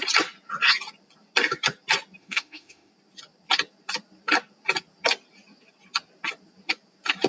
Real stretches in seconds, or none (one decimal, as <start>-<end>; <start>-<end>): 0.0-2.2; 2.9-7.3